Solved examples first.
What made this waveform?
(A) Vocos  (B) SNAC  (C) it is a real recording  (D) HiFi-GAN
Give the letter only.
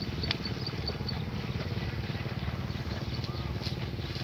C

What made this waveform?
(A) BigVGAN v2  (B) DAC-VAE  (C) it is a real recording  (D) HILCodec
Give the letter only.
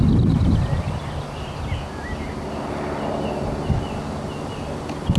C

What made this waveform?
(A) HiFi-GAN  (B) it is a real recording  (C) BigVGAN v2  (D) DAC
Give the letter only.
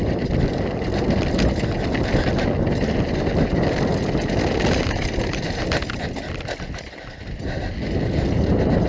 B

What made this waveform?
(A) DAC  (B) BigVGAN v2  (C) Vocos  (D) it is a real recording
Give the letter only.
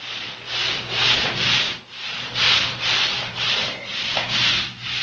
D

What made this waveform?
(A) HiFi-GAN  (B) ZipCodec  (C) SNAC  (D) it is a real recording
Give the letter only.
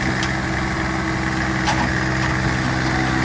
D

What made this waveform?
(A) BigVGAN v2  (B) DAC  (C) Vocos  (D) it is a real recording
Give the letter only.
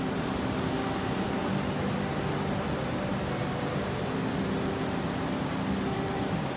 D